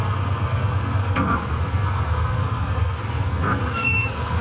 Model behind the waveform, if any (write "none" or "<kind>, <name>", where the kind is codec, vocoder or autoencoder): codec, SNAC